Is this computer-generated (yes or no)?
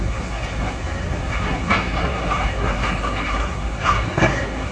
yes